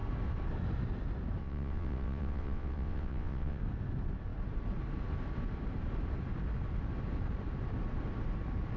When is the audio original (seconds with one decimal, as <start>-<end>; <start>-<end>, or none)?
0.0-1.4; 3.6-8.8